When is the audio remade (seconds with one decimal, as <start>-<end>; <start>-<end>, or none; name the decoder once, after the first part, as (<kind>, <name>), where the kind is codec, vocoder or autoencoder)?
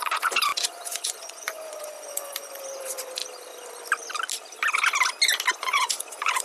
0.0-3.2 (vocoder, Vocos); 5.5-6.4